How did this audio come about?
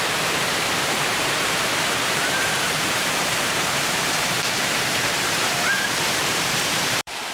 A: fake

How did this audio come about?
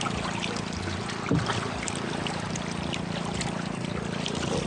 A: real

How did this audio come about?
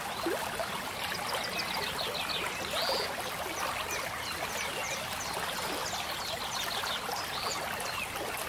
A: real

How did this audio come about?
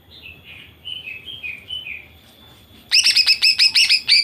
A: real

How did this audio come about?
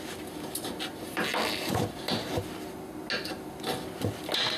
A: real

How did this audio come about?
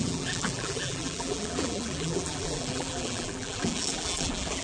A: fake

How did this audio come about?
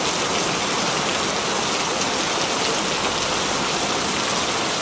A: real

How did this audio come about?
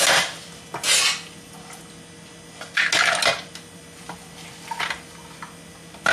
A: real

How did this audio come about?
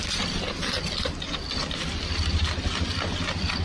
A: real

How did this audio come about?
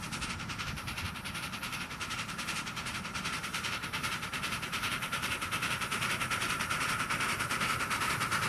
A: fake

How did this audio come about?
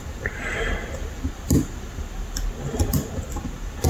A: real